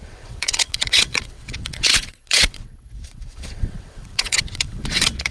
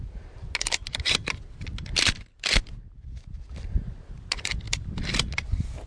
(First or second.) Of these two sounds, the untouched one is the second